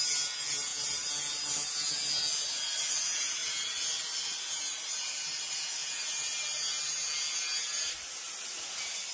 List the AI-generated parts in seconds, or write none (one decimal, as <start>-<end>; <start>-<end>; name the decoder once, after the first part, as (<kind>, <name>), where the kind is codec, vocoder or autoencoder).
none